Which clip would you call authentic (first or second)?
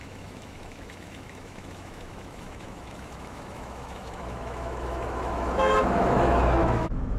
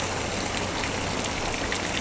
second